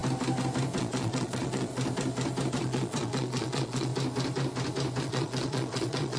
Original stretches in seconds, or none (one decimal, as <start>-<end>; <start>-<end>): 0.0-0.8; 1.7-2.5; 3.9-5.0